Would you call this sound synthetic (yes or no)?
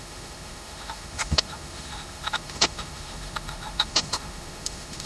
yes